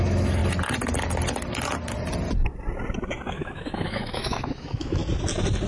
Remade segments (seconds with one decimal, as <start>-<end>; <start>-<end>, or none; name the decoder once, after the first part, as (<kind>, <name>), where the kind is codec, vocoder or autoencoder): 0.0-0.4 (autoencoder, DAC-VAE); 3.3-5.0